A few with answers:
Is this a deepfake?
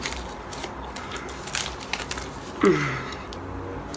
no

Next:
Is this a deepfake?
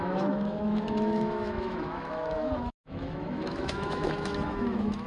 yes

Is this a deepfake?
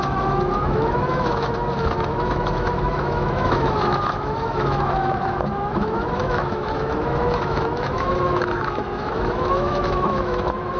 yes